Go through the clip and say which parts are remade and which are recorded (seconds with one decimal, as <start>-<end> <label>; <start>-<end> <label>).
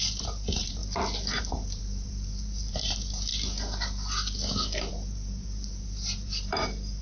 0.0-0.8 remade; 0.8-1.4 recorded; 1.4-3.3 remade; 3.3-4.9 recorded; 4.9-7.0 remade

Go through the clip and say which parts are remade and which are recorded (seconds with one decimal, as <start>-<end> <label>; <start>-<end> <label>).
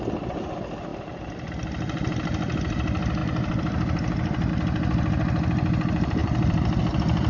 0.0-0.9 recorded; 0.9-1.5 remade; 1.5-6.2 recorded; 6.2-6.8 remade; 6.8-7.3 recorded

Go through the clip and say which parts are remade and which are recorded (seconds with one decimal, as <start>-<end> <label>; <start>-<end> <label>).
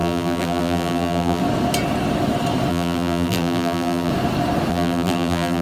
0.0-1.4 remade; 1.4-2.7 recorded; 2.7-4.1 remade; 4.1-4.7 recorded; 4.7-5.6 remade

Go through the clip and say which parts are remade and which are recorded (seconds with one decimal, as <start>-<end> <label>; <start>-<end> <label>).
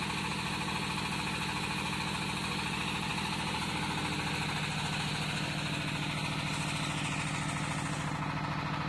0.0-8.9 recorded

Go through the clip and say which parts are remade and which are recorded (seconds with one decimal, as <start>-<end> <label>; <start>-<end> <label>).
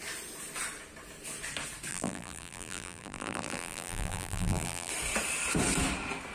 0.0-1.9 recorded; 1.9-4.9 remade; 4.9-6.3 recorded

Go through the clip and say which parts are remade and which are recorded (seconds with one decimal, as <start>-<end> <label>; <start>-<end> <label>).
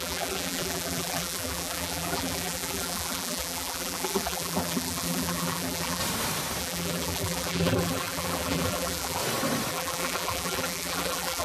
0.0-6.0 remade; 6.0-6.6 recorded; 6.6-9.2 remade; 9.2-9.7 recorded; 9.7-11.4 remade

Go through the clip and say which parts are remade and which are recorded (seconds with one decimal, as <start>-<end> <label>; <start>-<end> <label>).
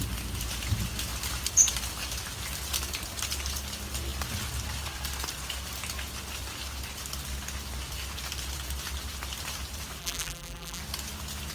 0.0-10.0 recorded; 10.0-10.8 remade; 10.8-11.5 recorded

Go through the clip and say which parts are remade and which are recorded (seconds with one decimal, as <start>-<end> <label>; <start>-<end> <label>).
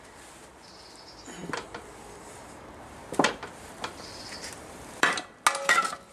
0.0-1.4 recorded; 1.4-5.1 remade; 5.1-6.1 recorded